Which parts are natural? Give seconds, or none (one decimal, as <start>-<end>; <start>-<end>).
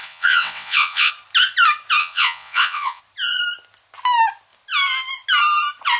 1.1-2.0; 3.0-6.0